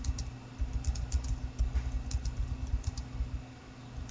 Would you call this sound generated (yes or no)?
no